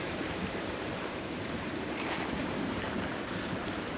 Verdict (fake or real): fake